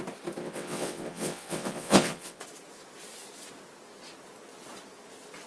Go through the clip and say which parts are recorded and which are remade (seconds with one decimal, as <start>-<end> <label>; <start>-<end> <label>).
0.0-0.4 recorded; 0.4-2.4 remade; 2.4-5.5 recorded